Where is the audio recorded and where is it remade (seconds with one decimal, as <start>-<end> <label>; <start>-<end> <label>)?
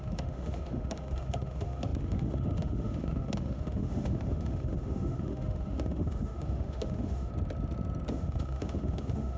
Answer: 0.0-7.3 remade; 7.3-8.1 recorded; 8.1-9.4 remade